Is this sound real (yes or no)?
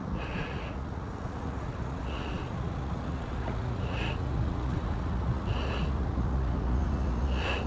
no